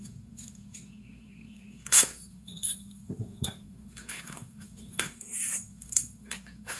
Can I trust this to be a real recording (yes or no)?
no